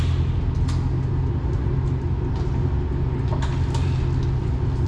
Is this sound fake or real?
real